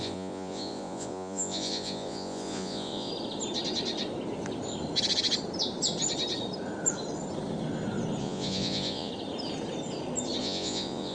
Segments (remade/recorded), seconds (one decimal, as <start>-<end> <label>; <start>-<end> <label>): 0.0-3.1 remade; 3.1-8.2 recorded; 8.2-9.1 remade; 9.1-10.4 recorded; 10.4-11.1 remade